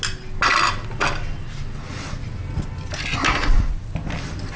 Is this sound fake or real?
real